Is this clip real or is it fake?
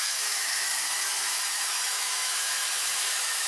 fake